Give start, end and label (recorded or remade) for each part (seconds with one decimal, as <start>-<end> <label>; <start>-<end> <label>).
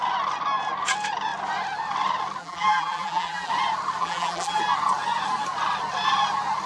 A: 0.0-2.4 recorded; 2.4-3.5 remade; 3.5-4.0 recorded; 4.0-4.6 remade; 4.6-6.7 recorded